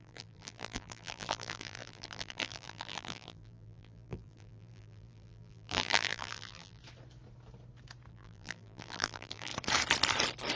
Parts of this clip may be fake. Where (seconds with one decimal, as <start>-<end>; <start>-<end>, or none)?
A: 0.0-6.8; 8.1-9.5